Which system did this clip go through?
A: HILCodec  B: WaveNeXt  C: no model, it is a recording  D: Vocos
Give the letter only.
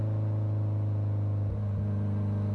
C